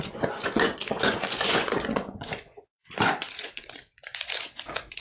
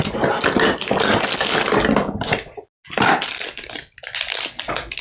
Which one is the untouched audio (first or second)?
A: second